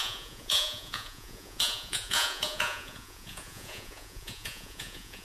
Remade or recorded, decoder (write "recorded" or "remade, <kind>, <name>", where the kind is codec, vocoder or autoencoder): remade, vocoder, Vocos